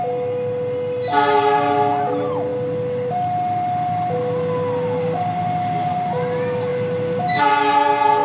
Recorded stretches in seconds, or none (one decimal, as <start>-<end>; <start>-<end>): 0.0-8.2